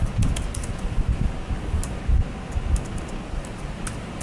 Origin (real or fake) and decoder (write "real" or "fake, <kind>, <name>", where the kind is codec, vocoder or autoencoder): real